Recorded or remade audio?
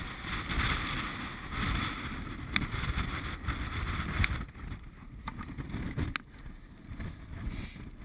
recorded